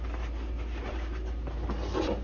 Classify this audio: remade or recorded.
recorded